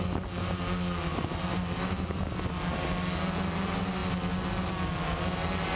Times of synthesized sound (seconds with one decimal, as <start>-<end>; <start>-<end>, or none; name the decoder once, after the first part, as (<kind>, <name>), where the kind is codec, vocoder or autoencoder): none